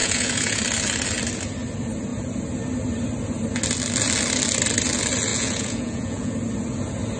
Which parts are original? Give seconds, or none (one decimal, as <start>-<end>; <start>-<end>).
0.6-5.3; 6.3-7.2